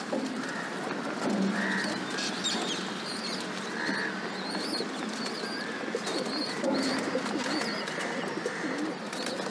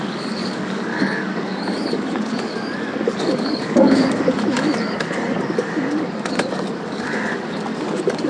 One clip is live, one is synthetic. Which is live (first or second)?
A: first